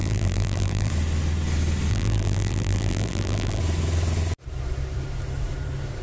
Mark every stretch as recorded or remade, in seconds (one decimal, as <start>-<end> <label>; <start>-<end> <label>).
0.0-0.9 remade; 0.9-1.9 recorded; 1.9-3.6 remade; 3.6-6.0 recorded